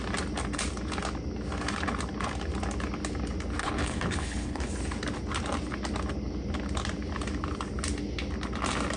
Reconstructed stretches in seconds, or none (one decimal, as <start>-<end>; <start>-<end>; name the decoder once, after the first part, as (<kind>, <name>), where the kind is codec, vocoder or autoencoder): 3.6-4.7 (codec, HILCodec)